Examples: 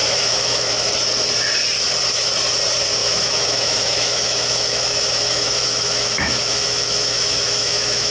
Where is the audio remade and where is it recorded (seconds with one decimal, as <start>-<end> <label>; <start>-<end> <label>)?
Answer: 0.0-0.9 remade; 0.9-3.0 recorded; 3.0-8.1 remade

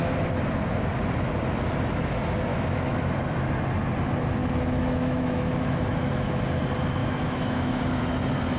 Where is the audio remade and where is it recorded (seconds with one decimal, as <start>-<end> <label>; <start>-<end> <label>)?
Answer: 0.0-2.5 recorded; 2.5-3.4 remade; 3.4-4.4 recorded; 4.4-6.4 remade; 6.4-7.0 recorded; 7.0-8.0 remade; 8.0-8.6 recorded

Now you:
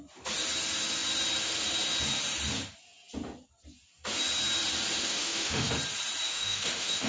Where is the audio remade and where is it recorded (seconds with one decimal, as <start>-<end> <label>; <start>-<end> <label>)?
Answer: 0.0-5.0 recorded; 5.0-5.7 remade; 5.7-6.3 recorded; 6.3-7.1 remade